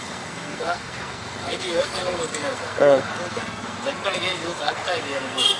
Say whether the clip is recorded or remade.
remade